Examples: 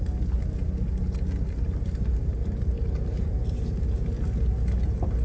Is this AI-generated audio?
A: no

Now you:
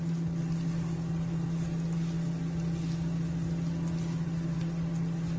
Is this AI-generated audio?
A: no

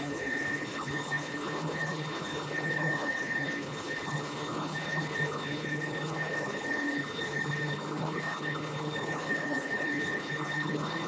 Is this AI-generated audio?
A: yes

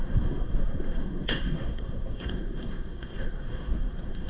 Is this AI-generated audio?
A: yes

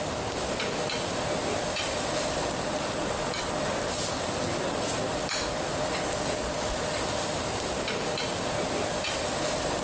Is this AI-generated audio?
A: no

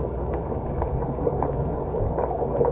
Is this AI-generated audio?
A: yes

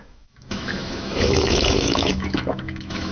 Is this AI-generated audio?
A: yes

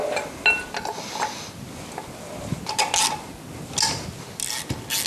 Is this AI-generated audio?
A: no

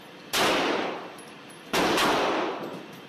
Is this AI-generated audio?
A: no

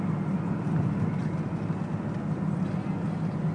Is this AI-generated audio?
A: no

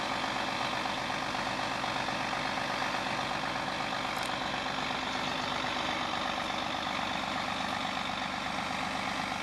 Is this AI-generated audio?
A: no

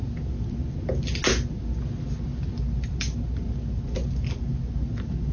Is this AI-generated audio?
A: no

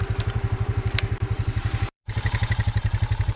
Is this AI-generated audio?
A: yes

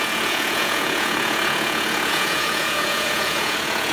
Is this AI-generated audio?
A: yes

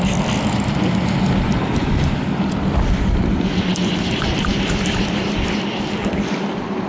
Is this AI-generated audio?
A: no